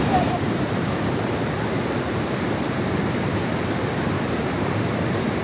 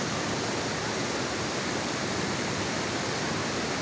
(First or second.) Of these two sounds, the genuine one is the second